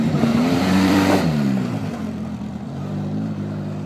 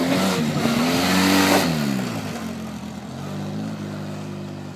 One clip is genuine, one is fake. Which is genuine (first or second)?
second